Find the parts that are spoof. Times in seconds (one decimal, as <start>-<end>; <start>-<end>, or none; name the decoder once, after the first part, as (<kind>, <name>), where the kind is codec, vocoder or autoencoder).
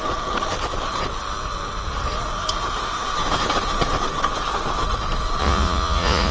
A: 5.4-6.3 (vocoder, Vocos)